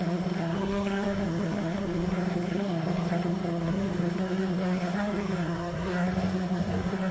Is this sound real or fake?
fake